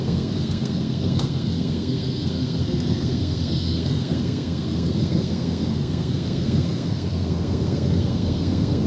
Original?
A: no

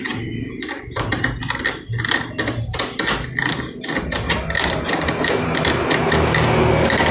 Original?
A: yes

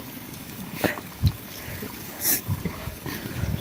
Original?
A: no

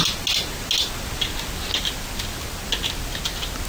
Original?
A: yes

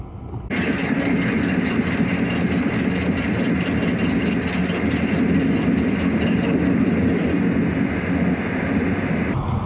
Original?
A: yes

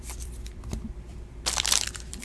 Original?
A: no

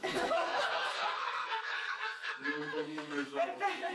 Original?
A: no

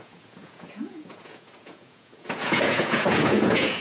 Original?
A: no